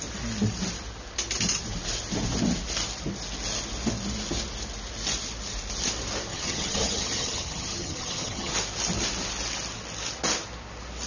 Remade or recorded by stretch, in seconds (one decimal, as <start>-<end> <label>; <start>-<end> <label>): 0.0-6.3 recorded; 6.3-8.5 remade; 8.5-11.1 recorded

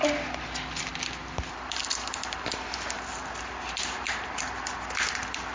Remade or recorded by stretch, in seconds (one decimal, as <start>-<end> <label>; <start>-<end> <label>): 0.0-5.5 recorded

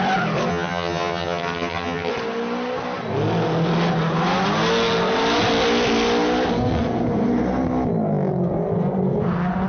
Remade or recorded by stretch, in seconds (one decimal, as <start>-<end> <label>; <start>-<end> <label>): 0.0-0.5 recorded; 0.5-2.1 remade; 2.1-9.7 recorded